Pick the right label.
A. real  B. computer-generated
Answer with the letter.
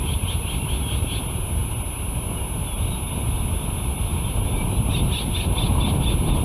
A